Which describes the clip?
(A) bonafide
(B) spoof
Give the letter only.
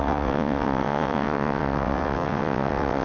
B